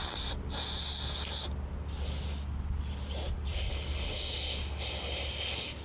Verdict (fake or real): real